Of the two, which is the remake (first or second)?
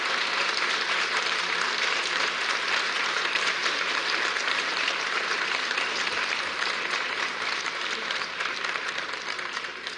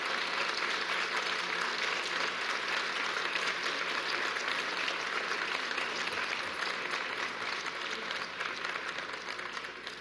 first